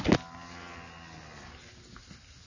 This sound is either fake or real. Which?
real